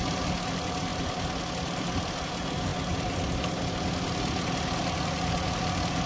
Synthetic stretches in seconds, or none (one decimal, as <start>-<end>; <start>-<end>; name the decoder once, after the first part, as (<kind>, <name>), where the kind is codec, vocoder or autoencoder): none